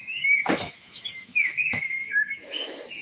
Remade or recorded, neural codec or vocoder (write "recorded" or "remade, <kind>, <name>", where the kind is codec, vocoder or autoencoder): remade, autoencoder, DAC-VAE